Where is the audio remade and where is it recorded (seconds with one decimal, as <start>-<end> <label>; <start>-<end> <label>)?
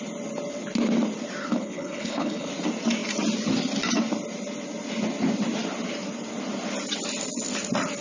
0.0-1.4 recorded; 1.4-2.5 remade; 2.5-8.0 recorded